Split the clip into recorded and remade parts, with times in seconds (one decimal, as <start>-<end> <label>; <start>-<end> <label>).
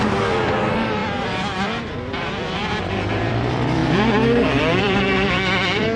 0.0-3.8 remade; 3.8-4.8 recorded; 4.8-6.0 remade